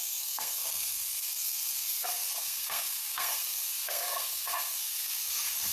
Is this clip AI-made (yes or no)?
yes